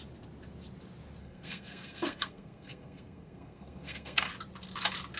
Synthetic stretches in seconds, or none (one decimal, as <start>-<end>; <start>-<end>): 1.2-4.3